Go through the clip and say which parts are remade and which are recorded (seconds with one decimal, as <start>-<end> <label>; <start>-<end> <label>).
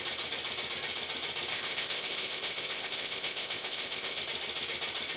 0.0-1.5 recorded; 1.5-4.2 remade; 4.2-5.2 recorded